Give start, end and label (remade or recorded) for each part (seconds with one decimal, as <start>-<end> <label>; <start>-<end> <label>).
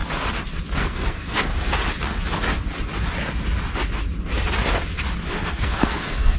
0.0-0.8 recorded; 0.8-1.5 remade; 1.5-5.3 recorded; 5.3-6.4 remade